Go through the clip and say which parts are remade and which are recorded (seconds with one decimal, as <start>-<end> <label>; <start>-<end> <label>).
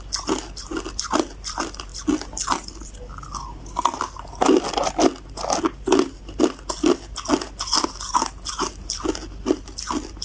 0.0-10.2 recorded